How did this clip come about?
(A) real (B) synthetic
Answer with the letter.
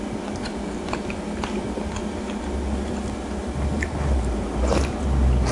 A